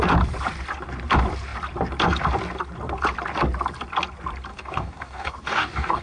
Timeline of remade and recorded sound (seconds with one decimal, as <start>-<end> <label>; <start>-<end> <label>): 0.0-4.5 recorded; 4.5-6.0 remade